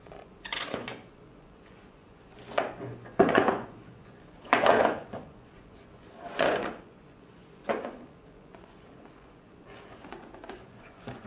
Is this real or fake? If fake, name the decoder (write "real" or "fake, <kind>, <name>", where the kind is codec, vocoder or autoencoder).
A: fake, vocoder, Vocos